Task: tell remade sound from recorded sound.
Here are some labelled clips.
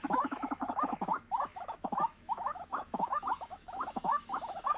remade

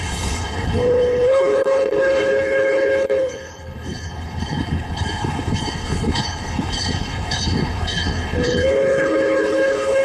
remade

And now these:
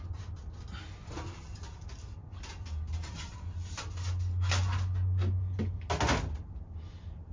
recorded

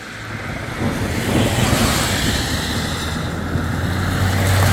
recorded